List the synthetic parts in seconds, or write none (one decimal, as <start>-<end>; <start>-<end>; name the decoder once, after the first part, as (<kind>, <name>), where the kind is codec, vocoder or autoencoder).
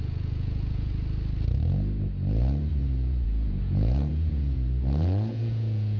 0.0-0.9 (vocoder, Vocos); 2.7-6.0